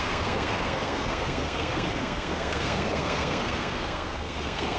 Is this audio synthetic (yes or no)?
yes